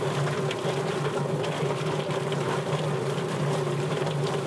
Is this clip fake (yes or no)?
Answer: no